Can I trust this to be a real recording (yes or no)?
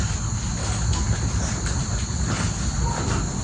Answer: yes